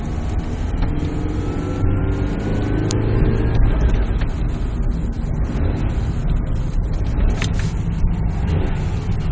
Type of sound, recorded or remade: recorded